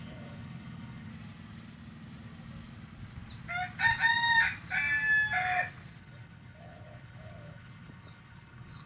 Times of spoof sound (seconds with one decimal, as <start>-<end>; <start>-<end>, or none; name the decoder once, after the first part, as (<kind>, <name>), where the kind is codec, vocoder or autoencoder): 0.0-1.1 (codec, HILCodec); 6.0-8.9